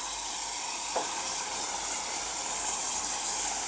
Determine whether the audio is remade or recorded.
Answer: recorded